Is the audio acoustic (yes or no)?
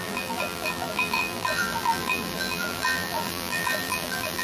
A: no